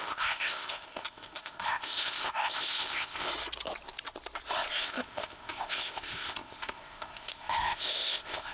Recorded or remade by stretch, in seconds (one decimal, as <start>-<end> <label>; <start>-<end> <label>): 0.0-3.3 remade; 3.3-4.7 recorded; 4.7-8.5 remade